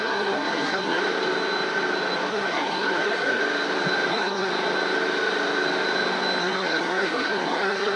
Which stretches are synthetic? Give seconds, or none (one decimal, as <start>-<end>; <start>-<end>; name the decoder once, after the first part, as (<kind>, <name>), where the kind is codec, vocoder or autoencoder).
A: 0.0-1.0 (codec, SNAC); 2.3-3.4; 4.1-4.5; 6.4-8.0